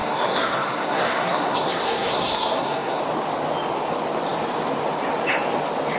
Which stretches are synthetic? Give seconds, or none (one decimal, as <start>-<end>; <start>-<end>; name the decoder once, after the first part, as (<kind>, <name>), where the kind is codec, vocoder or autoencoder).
0.0-3.0 (codec, SNAC)